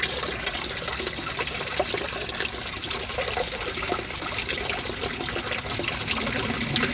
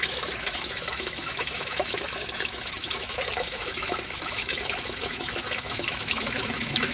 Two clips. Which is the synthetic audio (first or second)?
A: second